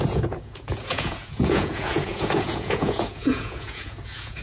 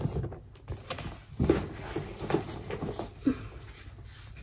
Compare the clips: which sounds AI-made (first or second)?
first